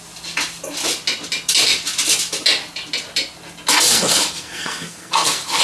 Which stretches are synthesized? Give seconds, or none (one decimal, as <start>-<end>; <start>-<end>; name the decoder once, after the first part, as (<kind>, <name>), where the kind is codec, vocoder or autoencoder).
3.9-5.6 (codec, SNAC)